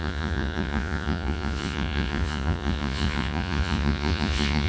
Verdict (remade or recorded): remade